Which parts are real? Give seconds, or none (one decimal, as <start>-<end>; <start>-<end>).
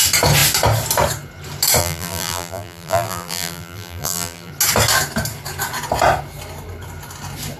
0.0-1.8; 4.5-7.6